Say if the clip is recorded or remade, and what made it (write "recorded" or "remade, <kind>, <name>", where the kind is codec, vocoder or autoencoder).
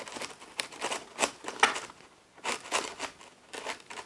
recorded